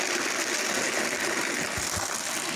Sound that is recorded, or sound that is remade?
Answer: recorded